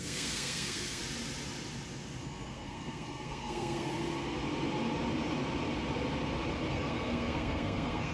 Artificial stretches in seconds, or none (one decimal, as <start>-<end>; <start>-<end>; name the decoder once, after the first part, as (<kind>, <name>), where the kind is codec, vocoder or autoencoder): 0.0-1.0 (codec, SNAC); 2.2-3.9; 6.7-8.1